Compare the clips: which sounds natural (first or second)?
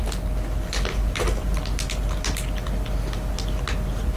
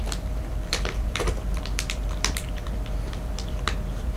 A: first